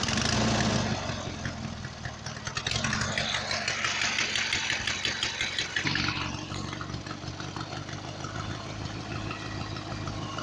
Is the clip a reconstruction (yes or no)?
no